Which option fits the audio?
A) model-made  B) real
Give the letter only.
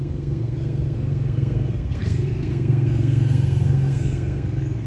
A